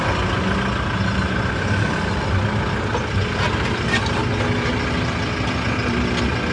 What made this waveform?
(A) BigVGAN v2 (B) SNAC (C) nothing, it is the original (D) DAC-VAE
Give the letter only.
C